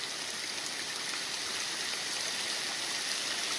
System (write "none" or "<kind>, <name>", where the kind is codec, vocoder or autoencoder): none